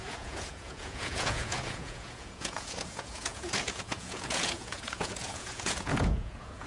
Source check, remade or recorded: remade